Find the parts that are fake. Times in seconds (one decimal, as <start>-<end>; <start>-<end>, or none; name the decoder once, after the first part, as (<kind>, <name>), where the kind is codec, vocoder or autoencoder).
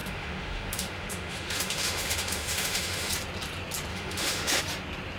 0.0-3.1 (autoencoder, DAC-VAE); 3.9-4.6